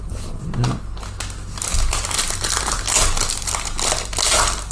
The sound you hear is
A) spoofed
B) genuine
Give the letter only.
B